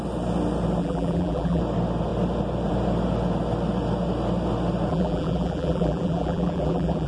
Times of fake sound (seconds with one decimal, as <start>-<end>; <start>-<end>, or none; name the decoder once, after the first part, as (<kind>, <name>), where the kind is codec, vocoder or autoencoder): 0.8-1.6 (vocoder, BigVGAN v2); 4.9-7.1